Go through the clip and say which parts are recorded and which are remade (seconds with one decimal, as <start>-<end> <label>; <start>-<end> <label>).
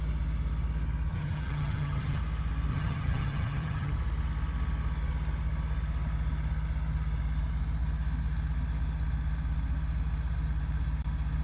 0.0-1.1 recorded; 1.1-2.2 remade; 2.2-2.7 recorded; 2.7-3.9 remade; 3.9-11.4 recorded